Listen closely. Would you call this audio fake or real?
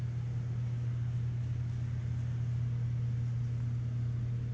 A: real